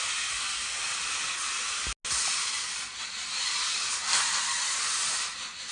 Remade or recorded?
recorded